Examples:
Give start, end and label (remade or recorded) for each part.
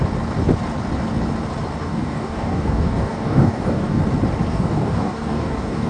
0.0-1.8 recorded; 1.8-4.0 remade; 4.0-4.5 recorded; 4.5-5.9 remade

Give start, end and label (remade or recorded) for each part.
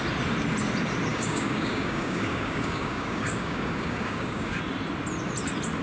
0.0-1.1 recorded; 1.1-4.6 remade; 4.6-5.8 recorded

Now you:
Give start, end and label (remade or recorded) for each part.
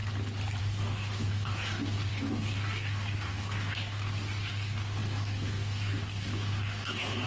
0.0-0.6 recorded; 0.6-7.3 remade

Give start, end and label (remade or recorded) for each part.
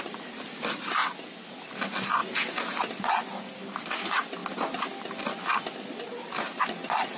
0.0-7.2 recorded